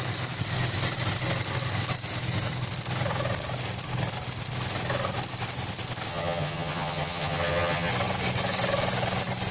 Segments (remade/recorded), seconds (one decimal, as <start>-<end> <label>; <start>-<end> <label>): 0.0-6.1 recorded; 6.1-7.9 remade; 7.9-9.5 recorded